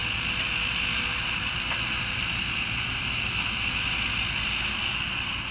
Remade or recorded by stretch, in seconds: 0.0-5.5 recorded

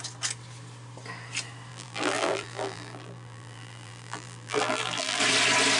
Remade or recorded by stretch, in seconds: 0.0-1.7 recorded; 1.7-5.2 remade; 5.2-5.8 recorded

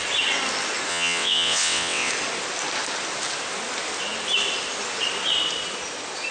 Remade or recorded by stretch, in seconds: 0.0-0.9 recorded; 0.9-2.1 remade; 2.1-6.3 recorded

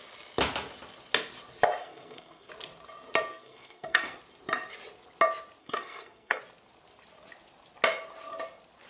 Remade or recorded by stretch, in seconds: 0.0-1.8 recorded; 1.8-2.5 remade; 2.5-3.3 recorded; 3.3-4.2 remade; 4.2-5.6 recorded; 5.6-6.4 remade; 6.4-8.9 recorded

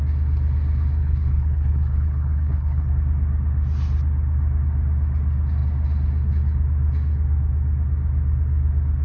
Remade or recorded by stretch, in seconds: 0.0-1.0 recorded; 1.0-2.9 remade; 2.9-9.0 recorded